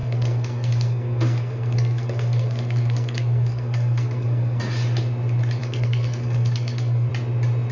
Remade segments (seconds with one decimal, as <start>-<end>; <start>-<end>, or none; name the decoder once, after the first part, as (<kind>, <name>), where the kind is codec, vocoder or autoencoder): 0.0-4.6 (codec, SNAC); 5.6-7.1